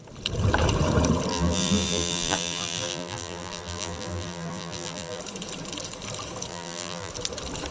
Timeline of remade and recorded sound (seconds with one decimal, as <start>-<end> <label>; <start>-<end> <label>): 0.0-1.3 recorded; 1.3-5.2 remade; 5.2-6.5 recorded; 6.5-7.1 remade; 7.1-7.7 recorded